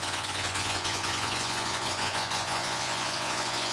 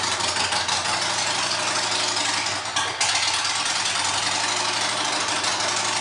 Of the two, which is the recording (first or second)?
second